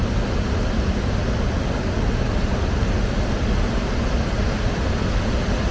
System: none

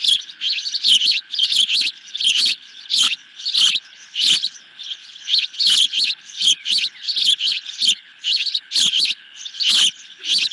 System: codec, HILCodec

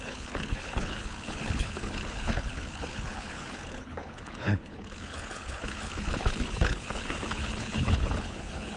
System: codec, HILCodec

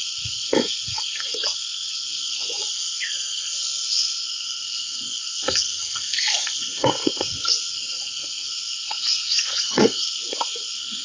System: codec, SNAC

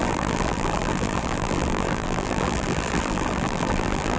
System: vocoder, BigVGAN v2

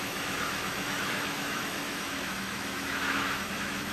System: autoencoder, DAC-VAE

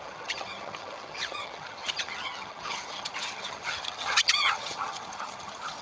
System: vocoder, HiFi-GAN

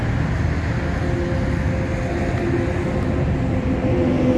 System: none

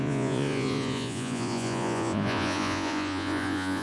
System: vocoder, Vocos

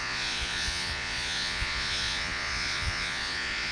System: vocoder, Vocos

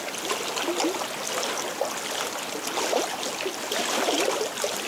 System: none